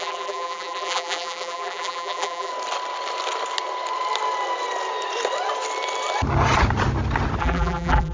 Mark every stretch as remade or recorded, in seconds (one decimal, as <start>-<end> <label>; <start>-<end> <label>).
0.0-2.5 remade; 2.5-7.4 recorded; 7.4-8.1 remade